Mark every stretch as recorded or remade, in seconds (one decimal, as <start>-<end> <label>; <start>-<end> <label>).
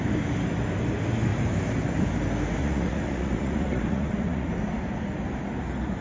0.0-2.6 recorded; 2.6-4.5 remade; 4.5-6.0 recorded